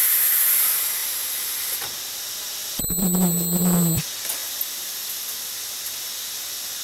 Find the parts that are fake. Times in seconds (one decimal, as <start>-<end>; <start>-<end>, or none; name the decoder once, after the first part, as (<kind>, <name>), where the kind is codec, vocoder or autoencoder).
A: 0.0-0.5 (vocoder, BigVGAN v2); 4.4-5.5